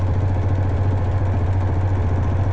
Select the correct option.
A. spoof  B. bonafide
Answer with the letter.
B